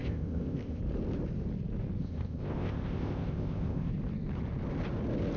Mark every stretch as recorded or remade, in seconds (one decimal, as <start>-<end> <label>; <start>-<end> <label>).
0.0-0.8 remade; 0.8-2.0 recorded; 2.0-3.9 remade; 3.9-5.4 recorded